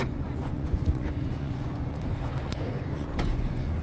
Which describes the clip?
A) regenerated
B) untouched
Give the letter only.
A